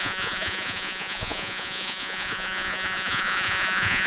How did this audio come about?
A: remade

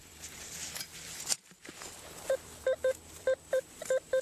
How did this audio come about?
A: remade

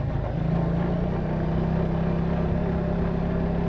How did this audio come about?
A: recorded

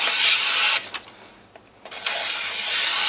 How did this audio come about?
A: recorded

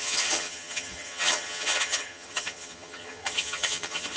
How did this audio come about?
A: remade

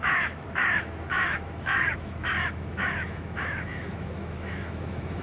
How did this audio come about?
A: remade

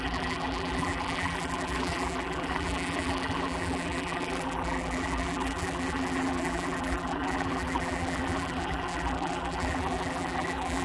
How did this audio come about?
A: remade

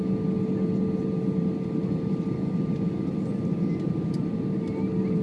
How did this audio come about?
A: recorded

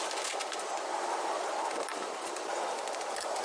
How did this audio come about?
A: recorded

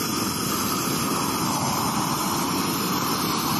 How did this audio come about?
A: recorded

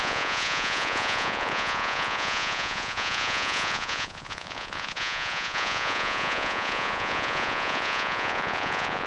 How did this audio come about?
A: remade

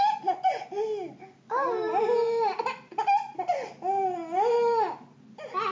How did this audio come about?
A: recorded